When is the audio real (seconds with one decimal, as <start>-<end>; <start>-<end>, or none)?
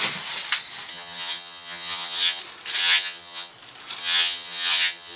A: 0.0-0.9; 2.4-2.8; 3.5-4.0